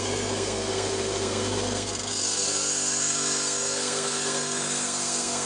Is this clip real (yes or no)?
no